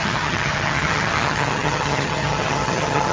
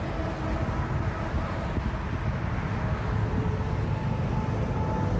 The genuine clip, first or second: second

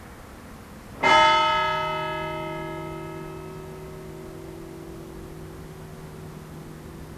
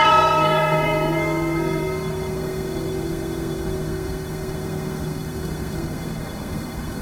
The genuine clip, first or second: first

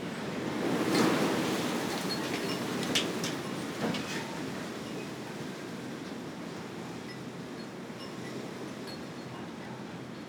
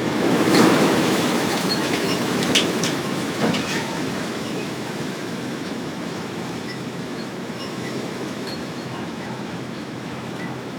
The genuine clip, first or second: first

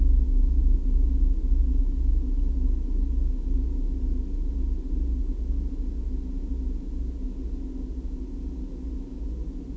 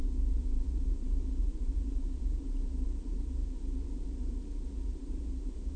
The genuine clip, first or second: first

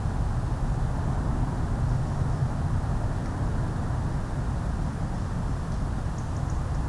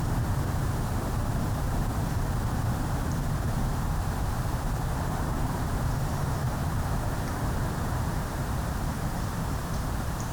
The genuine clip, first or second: first